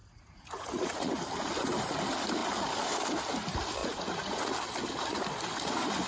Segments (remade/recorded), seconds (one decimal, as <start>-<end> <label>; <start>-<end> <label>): 0.0-1.1 remade; 1.1-3.8 recorded; 3.8-4.5 remade; 4.5-6.1 recorded